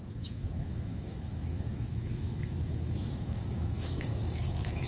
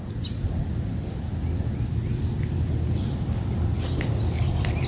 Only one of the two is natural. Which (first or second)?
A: second